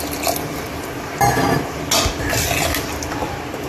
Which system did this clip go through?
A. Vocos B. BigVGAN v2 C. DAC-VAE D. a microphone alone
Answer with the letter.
D